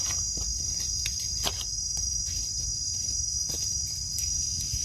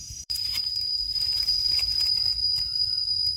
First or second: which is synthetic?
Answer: second